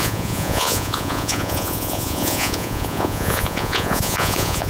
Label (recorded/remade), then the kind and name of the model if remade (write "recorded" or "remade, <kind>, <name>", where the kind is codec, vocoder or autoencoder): remade, vocoder, Vocos